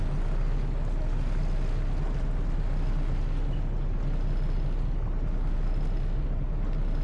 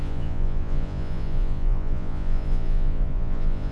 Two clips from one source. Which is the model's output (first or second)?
second